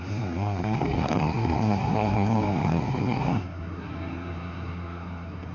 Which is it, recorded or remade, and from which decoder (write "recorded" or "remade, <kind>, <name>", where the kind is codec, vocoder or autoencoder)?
remade, codec, SNAC